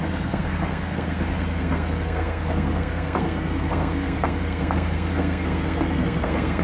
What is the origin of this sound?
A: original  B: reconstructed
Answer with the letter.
B